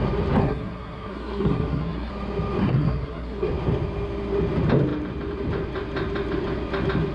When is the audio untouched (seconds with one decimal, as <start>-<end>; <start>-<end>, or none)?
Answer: 0.0-0.4; 2.1-2.6; 3.5-7.1